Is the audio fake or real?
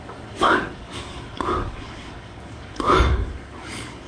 fake